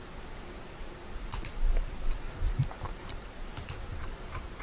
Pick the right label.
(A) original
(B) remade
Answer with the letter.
B